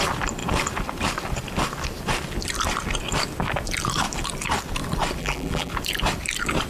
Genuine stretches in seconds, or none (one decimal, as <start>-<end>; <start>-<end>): 0.0-5.2; 5.7-6.7